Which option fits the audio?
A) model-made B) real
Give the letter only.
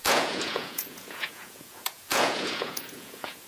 A